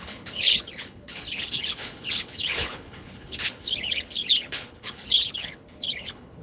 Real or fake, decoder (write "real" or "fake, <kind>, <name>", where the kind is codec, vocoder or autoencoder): fake, codec, HILCodec